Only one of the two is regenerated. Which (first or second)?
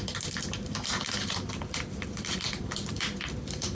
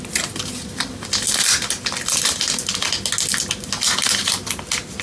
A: first